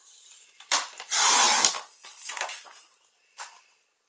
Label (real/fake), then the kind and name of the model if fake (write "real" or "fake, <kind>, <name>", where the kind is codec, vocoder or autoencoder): real